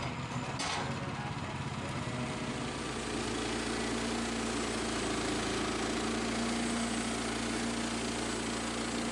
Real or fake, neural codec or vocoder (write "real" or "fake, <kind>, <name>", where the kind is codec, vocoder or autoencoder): real